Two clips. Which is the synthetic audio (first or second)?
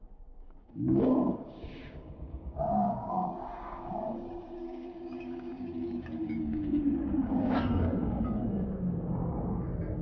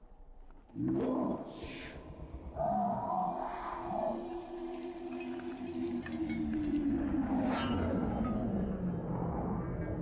first